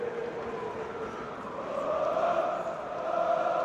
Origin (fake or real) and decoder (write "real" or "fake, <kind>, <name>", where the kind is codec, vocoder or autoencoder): real